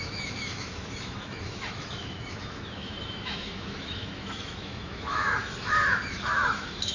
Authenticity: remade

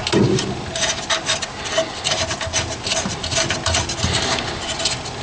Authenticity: recorded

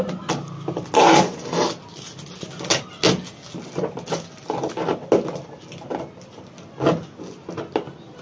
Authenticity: recorded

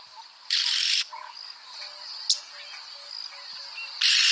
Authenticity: recorded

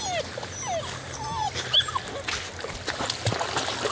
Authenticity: recorded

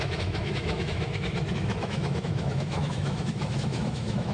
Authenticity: remade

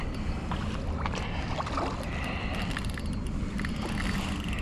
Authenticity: recorded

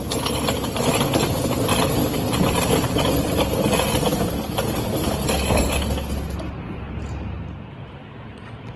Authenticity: recorded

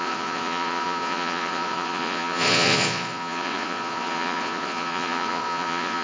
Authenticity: remade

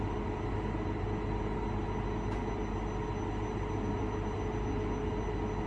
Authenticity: recorded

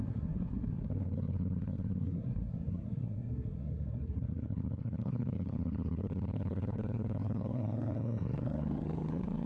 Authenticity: remade